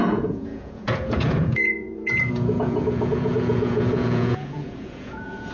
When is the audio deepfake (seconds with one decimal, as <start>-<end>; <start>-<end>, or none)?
0.0-5.5